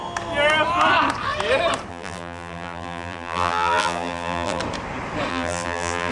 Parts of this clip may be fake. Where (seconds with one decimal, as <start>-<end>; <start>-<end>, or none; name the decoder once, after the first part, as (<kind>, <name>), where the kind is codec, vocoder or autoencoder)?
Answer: 1.9-4.6 (vocoder, BigVGAN v2); 5.3-6.1